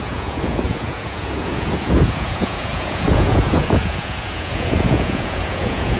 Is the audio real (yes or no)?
no